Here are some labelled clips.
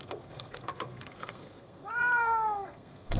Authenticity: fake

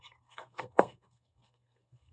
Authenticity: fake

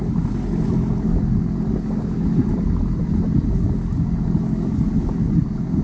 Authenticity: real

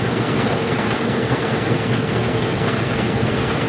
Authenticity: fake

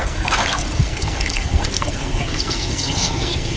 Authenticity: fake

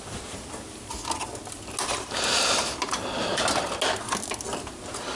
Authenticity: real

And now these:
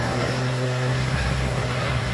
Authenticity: fake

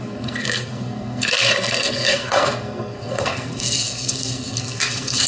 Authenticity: fake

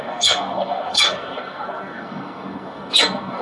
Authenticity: fake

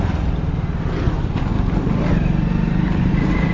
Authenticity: real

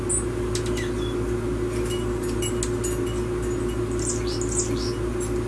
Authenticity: real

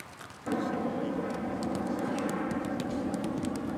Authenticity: real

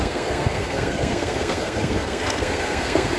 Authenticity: fake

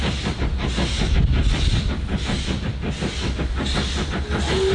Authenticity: real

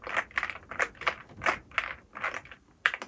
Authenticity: real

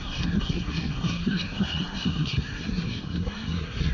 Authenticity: fake